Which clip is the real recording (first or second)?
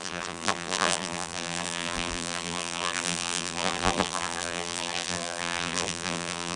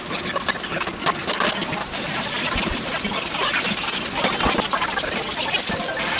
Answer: second